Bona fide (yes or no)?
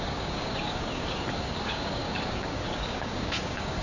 no